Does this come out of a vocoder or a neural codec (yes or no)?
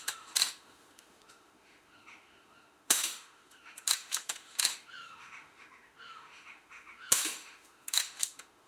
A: yes